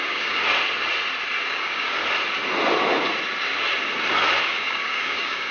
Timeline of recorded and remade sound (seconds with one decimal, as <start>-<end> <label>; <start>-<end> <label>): 0.0-0.4 remade; 0.4-1.5 recorded; 1.5-2.0 remade; 2.0-4.4 recorded; 4.4-5.5 remade